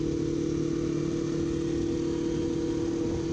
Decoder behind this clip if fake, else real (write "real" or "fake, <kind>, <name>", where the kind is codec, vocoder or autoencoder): real